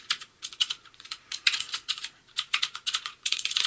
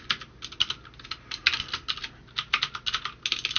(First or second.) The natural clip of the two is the second